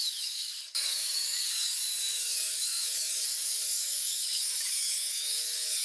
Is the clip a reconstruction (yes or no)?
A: yes